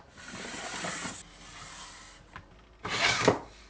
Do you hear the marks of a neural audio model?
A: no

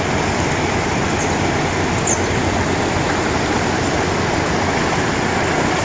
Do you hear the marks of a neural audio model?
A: no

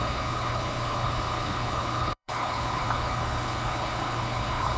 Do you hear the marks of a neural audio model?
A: yes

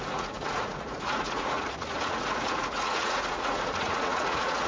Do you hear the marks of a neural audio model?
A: yes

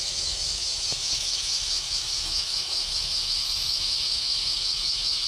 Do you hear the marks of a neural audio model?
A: yes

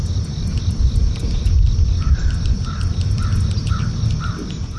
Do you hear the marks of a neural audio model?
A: no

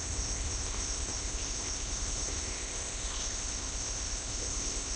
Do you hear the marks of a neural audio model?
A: yes